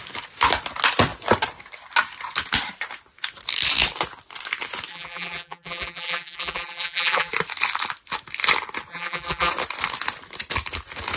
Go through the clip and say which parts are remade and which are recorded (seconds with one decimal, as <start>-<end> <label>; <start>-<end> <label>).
0.0-4.9 recorded; 4.9-7.3 remade; 7.3-8.9 recorded; 8.9-9.5 remade; 9.5-11.2 recorded